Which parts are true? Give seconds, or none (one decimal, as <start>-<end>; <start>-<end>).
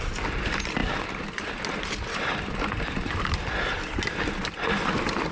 0.0-0.8; 4.0-5.3